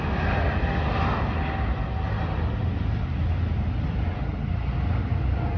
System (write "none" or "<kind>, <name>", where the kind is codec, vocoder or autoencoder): none